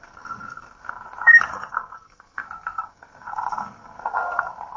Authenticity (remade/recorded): remade